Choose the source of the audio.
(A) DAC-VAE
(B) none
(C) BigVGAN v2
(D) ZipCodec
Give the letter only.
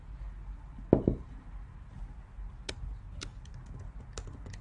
B